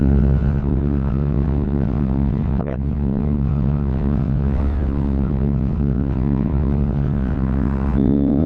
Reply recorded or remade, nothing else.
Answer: remade